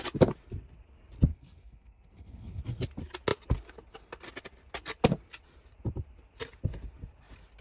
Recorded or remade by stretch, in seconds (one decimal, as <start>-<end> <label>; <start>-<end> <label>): 0.0-1.3 recorded; 1.3-2.6 remade; 2.6-7.6 recorded